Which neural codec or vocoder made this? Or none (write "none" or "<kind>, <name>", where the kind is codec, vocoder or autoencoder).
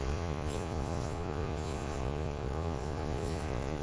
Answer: vocoder, Vocos